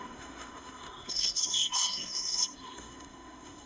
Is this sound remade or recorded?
remade